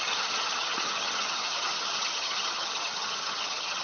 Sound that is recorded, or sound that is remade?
remade